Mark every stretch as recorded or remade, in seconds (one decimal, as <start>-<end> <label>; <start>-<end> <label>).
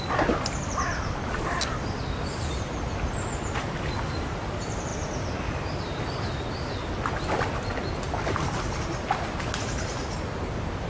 0.0-10.9 recorded